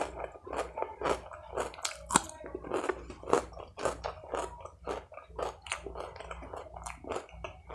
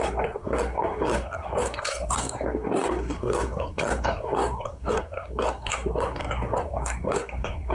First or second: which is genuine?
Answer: first